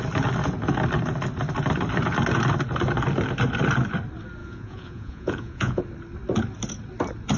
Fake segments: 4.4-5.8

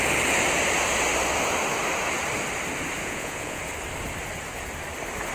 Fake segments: 3.0-3.6

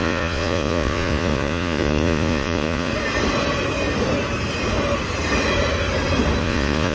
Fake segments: 0.0-2.9; 6.4-6.9

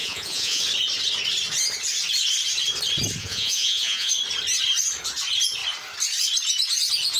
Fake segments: 0.0-0.6; 3.2-4.1

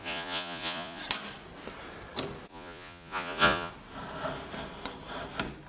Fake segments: 0.0-1.0; 2.5-3.7